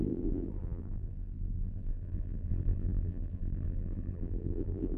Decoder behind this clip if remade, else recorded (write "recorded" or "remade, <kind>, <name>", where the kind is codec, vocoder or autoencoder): remade, vocoder, BigVGAN v2